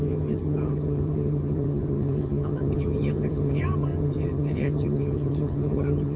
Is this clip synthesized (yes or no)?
yes